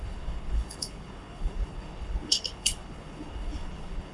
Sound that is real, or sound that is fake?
fake